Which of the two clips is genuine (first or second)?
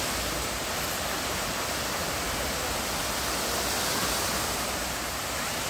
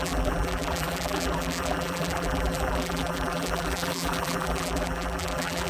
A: first